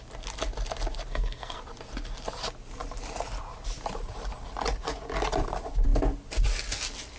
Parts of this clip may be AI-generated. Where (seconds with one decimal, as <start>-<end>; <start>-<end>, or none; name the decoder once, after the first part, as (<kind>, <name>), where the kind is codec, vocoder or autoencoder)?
1.1-1.6 (codec, SNAC)